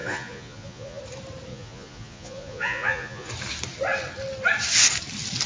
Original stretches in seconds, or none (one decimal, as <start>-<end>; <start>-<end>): 1.0-1.5; 3.3-5.5